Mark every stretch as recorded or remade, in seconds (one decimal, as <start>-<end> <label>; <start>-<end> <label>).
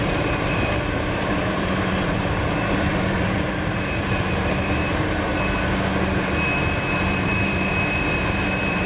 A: 0.0-5.3 remade; 5.3-6.9 recorded; 6.9-8.9 remade